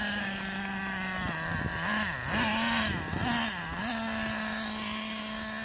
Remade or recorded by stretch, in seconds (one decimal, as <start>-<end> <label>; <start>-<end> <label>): 0.0-5.6 recorded